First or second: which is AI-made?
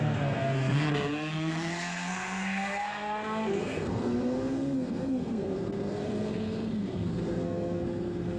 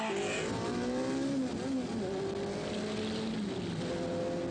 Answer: first